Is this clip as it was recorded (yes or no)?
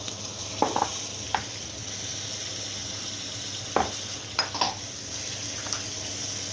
yes